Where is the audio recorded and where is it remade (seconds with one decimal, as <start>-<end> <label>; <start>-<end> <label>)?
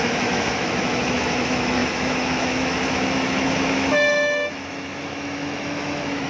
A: 0.0-6.3 remade